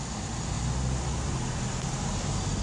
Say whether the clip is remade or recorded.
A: recorded